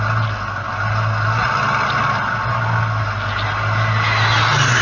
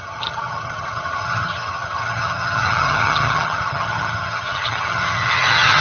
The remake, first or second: second